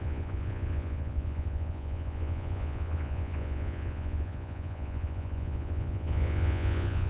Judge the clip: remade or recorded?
remade